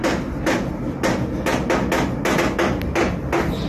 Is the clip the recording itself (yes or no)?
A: yes